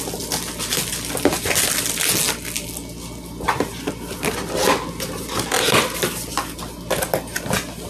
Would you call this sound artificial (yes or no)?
no